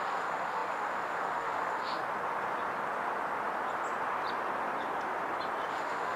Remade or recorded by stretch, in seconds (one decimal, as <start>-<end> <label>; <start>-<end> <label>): 0.0-2.0 remade; 2.0-5.7 recorded; 5.7-6.2 remade